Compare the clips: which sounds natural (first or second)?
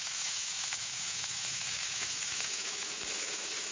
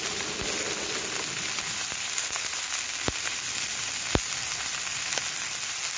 second